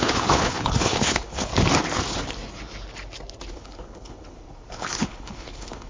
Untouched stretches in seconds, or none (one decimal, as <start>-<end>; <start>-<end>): 1.5-3.5